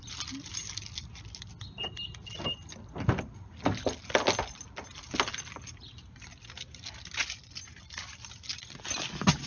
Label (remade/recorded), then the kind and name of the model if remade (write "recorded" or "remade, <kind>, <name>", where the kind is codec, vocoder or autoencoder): recorded